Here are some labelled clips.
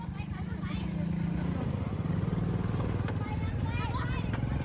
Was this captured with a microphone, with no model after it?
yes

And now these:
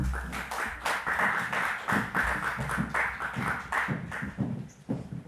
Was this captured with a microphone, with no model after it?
yes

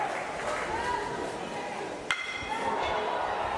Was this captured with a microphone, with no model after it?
yes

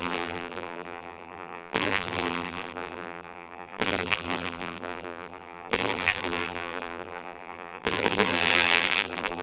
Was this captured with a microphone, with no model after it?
no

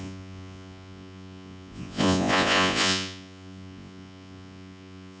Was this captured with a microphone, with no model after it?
no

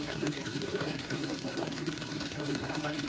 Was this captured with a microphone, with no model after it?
no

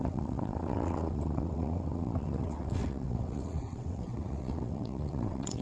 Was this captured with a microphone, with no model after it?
no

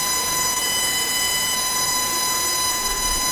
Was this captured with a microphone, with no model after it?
no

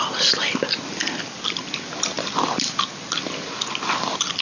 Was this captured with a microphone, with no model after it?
yes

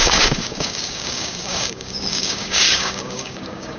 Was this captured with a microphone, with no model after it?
no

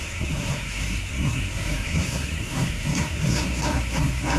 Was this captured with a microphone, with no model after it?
no